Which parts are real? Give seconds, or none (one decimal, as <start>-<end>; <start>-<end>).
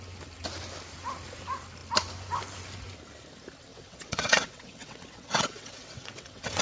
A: 0.0-3.7